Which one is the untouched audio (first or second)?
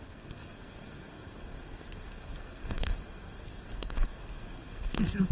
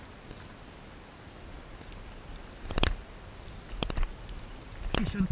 second